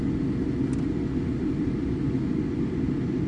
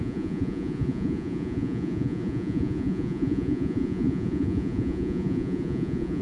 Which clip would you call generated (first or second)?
second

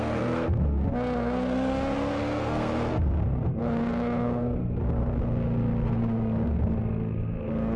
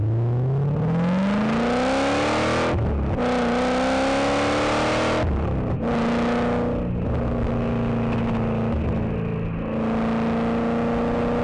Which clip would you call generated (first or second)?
first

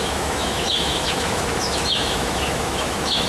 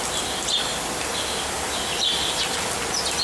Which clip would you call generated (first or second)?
first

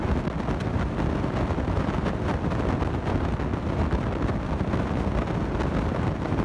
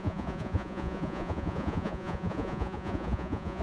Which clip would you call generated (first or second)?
second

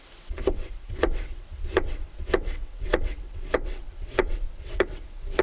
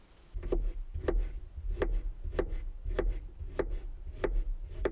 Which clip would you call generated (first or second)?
first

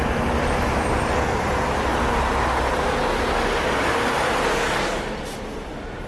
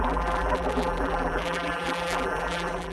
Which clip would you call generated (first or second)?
second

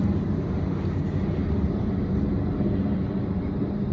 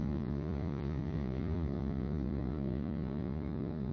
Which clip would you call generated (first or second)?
second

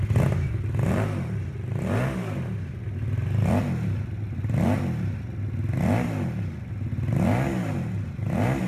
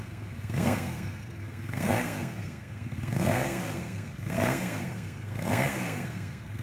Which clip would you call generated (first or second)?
second